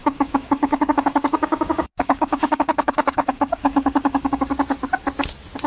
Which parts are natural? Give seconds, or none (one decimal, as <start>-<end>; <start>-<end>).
4.5-5.7